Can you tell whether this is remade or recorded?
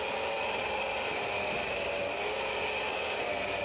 recorded